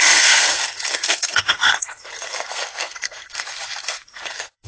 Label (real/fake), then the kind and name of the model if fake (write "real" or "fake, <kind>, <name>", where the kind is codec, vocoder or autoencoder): fake, codec, SNAC